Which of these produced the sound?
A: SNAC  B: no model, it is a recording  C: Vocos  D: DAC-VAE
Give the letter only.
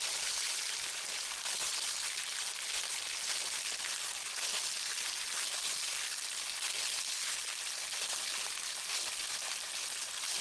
B